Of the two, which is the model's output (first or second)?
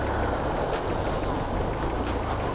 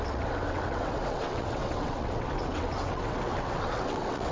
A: second